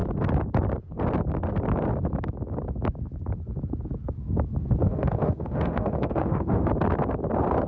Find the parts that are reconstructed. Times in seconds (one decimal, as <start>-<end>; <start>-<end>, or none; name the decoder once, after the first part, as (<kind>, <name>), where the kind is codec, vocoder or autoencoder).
4.8-6.7 (autoencoder, DAC-VAE)

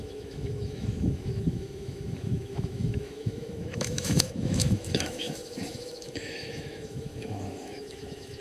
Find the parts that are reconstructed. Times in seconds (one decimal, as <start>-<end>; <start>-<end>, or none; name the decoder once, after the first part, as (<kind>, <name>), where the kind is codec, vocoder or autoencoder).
0.0-8.4 (autoencoder, DAC-VAE)